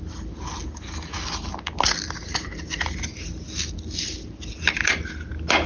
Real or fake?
real